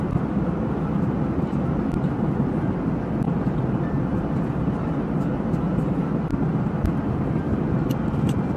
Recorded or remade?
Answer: recorded